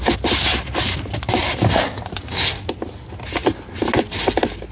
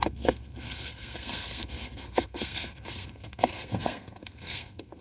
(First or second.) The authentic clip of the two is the first